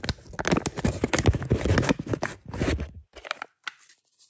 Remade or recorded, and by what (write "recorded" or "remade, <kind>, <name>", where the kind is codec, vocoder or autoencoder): recorded